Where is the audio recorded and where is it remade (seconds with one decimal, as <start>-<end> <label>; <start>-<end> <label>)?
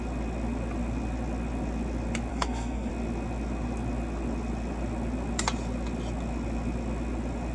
0.0-2.3 recorded; 2.3-2.9 remade; 2.9-7.5 recorded